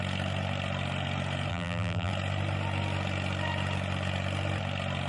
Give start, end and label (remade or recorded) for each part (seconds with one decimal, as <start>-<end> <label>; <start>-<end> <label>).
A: 0.0-1.5 recorded; 1.5-2.1 remade; 2.1-5.1 recorded